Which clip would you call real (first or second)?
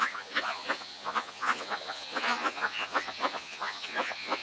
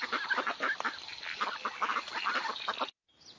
second